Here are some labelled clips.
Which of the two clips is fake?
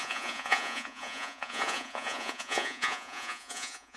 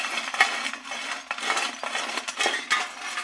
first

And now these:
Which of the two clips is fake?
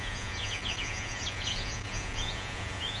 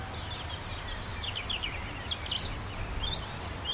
first